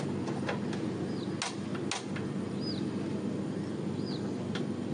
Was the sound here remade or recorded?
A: recorded